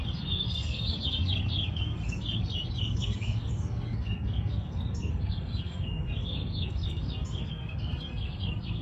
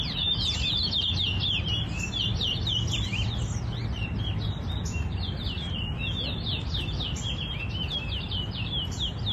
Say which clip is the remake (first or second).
first